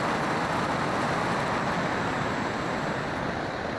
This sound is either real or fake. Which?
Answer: real